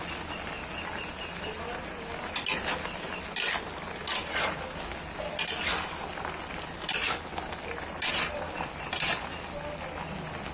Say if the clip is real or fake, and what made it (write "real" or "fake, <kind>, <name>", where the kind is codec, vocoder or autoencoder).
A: real